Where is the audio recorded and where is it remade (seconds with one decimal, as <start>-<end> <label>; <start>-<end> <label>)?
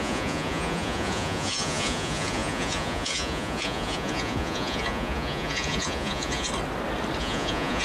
0.0-6.5 remade; 6.5-7.2 recorded; 7.2-7.8 remade